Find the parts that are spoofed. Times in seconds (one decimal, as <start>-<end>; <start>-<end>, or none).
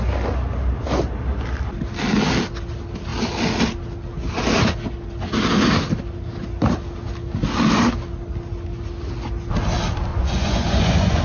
10.1-11.2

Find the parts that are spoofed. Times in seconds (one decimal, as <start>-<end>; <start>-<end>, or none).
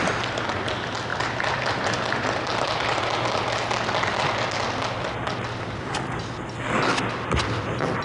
none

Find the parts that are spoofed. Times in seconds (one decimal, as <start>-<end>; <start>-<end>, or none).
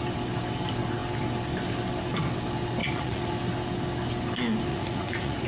2.8-3.3; 4.7-5.5